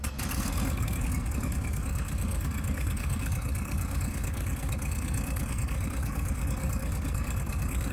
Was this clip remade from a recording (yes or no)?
yes